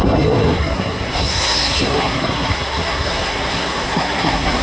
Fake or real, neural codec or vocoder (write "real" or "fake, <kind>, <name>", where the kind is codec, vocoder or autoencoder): fake, codec, SNAC